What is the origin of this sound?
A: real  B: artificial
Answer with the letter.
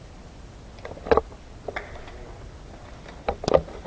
A